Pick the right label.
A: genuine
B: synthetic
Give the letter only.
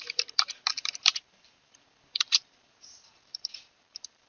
B